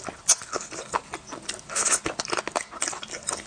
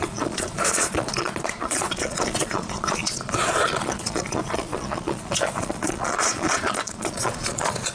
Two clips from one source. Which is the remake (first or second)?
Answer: second